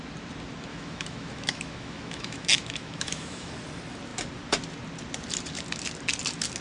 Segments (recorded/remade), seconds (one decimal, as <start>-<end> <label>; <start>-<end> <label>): 0.0-0.7 recorded; 0.7-3.5 remade; 3.5-6.6 recorded